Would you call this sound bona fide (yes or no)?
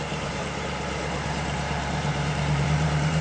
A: no